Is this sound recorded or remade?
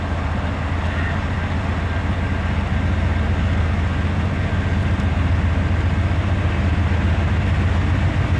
recorded